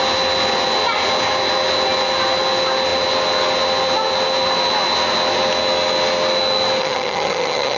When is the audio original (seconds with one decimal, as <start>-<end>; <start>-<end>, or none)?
0.0-6.8